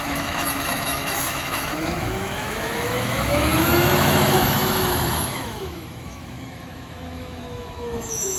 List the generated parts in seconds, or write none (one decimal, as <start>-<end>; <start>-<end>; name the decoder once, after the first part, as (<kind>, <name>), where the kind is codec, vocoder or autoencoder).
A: 0.0-8.4 (autoencoder, DAC-VAE)